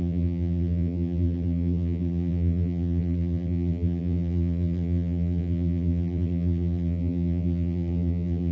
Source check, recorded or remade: remade